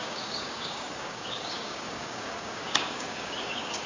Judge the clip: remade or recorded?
remade